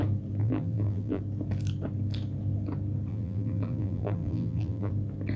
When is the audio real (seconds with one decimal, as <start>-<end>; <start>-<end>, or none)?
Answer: 0.0-0.4; 1.2-3.1; 4.9-5.4